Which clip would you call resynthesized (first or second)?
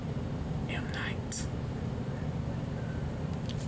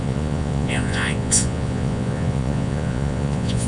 second